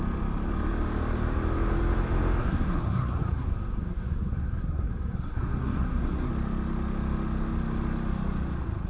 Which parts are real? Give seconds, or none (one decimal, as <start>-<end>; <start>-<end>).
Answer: 0.0-2.4; 6.3-8.9